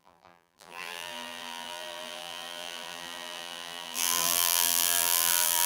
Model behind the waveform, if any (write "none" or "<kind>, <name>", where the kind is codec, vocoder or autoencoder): vocoder, BigVGAN v2